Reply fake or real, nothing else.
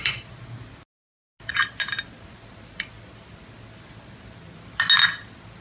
real